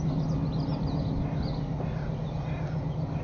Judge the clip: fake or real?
real